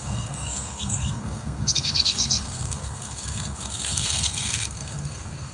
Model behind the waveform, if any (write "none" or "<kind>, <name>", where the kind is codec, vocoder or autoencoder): codec, SNAC